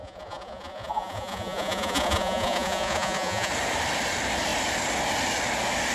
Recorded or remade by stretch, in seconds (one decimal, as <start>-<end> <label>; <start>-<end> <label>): 0.0-3.5 remade; 3.5-5.9 recorded